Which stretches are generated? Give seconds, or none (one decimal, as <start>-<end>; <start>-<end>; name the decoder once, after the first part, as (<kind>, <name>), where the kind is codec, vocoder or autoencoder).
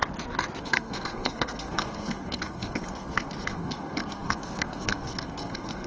0.6-5.9 (codec, SNAC)